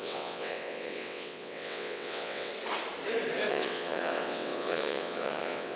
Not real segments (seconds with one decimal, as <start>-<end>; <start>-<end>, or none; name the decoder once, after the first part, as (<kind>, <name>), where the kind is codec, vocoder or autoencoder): 0.0-2.5 (vocoder, WaveNeXt); 3.5-5.8